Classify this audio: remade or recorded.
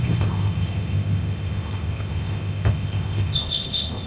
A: remade